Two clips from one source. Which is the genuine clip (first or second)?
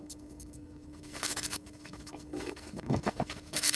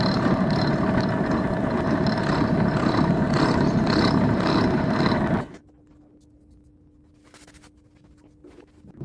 second